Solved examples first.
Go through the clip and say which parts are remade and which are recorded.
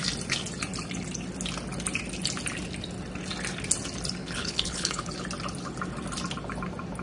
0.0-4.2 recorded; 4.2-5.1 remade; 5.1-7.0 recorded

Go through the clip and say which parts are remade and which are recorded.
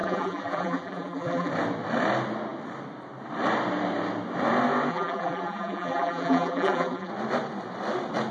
0.0-1.5 remade; 1.5-4.9 recorded; 4.9-7.1 remade; 7.1-8.3 recorded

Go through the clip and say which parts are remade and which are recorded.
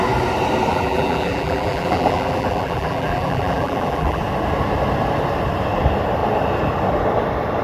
0.0-0.7 recorded; 0.7-4.2 remade; 4.2-7.6 recorded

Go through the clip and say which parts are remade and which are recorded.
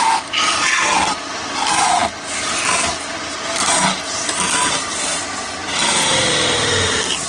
0.0-7.3 recorded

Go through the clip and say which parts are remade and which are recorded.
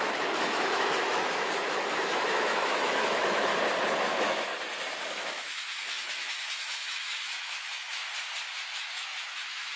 0.0-3.5 remade; 3.5-4.0 recorded; 4.0-4.5 remade; 4.5-5.1 recorded; 5.1-8.0 remade; 8.0-8.7 recorded; 8.7-9.8 remade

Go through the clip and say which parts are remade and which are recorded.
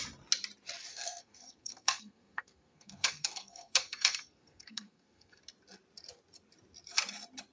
0.0-0.9 recorded; 0.9-5.4 remade; 5.4-7.5 recorded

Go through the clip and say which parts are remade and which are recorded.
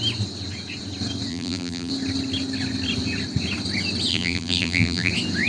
0.0-1.3 recorded; 1.3-1.9 remade; 1.9-4.1 recorded; 4.1-5.1 remade; 5.1-5.5 recorded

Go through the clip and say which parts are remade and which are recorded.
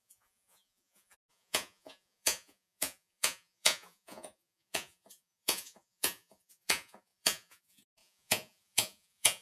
0.0-9.4 remade